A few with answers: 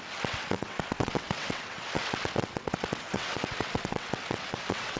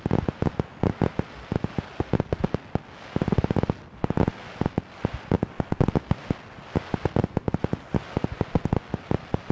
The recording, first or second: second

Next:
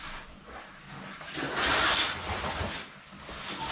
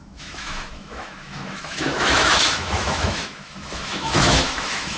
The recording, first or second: first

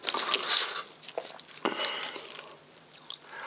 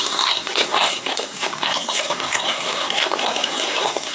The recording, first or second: first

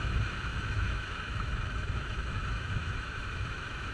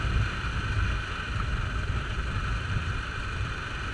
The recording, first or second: second